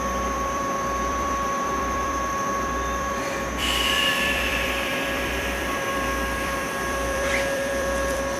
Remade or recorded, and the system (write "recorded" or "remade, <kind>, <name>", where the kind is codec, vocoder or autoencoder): remade, vocoder, BigVGAN v2